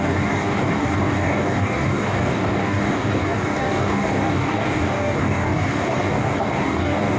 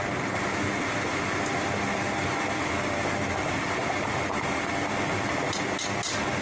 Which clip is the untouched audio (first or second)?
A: second